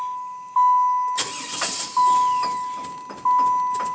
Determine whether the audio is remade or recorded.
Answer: recorded